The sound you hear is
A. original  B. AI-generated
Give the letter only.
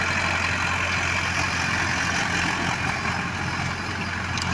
A